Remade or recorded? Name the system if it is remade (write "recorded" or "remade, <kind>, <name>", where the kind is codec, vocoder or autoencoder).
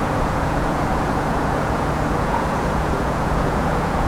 remade, vocoder, Vocos